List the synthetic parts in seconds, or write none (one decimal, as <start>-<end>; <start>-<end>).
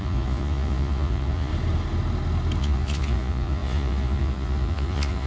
0.0-1.5; 2.6-5.3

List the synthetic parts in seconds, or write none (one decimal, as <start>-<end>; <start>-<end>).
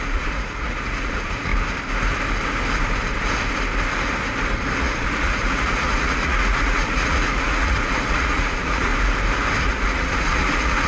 0.0-1.5; 4.8-8.9; 9.6-10.9